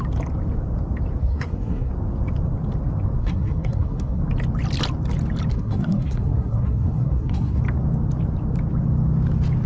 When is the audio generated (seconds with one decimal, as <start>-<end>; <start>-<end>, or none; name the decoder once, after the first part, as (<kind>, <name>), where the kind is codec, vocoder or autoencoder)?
1.2-1.9 (codec, SNAC); 3.2-4.2; 5.5-7.6